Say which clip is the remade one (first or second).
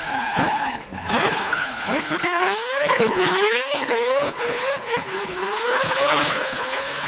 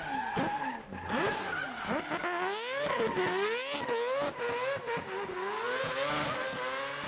first